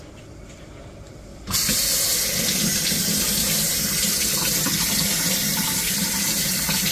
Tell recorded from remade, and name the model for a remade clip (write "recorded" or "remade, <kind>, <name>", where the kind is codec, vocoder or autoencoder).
recorded